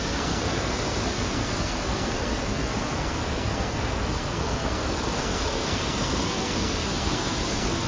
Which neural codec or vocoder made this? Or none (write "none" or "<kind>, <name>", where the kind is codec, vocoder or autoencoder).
codec, SNAC